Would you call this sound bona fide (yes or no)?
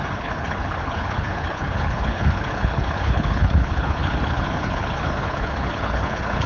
no